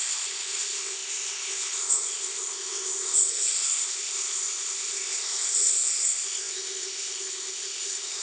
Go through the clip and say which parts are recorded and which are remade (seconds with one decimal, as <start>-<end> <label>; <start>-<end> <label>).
0.0-8.2 remade